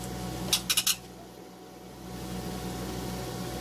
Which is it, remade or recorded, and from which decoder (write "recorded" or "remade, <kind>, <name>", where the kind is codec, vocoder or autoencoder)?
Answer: recorded